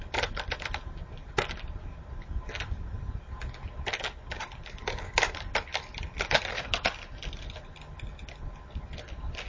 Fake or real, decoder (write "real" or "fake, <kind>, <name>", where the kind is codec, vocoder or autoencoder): real